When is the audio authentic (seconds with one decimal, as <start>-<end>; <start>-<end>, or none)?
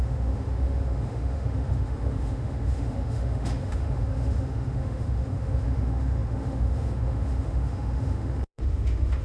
none